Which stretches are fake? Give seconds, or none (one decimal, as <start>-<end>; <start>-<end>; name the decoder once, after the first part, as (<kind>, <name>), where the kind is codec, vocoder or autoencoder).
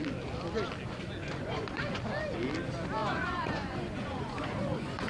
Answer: 1.2-2.0 (vocoder, Vocos); 3.0-5.1